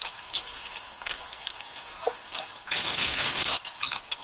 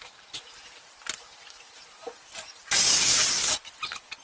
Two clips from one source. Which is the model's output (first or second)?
first